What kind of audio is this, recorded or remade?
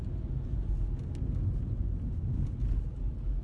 recorded